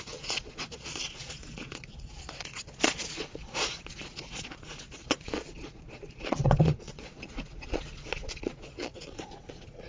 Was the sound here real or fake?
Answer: fake